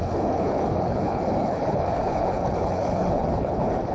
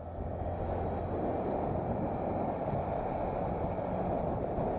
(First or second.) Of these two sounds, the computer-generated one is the first